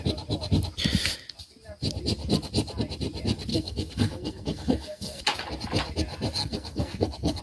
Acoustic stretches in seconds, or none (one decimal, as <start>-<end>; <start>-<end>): 0.0-3.5; 5.2-6.4